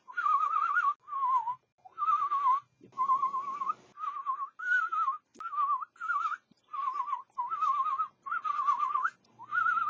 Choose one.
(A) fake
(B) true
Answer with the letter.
B